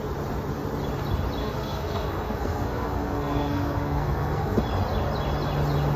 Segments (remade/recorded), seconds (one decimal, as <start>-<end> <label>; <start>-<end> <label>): 0.0-1.4 recorded; 1.4-4.6 remade; 4.6-6.0 recorded